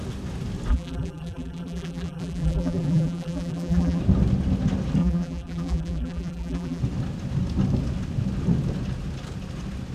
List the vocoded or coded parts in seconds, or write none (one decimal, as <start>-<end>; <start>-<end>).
0.7-4.0; 5.0-6.8